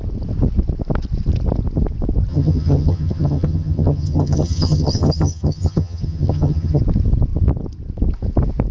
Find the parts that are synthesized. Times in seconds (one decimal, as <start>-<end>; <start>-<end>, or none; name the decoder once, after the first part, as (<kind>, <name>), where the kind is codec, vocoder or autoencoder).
2.3-6.8 (vocoder, HiFi-GAN)